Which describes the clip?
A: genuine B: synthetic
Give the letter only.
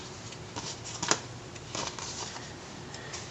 B